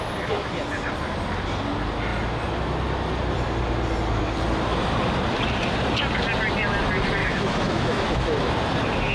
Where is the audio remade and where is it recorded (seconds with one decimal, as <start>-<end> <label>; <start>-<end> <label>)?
0.0-7.2 recorded; 7.2-8.5 remade; 8.5-9.1 recorded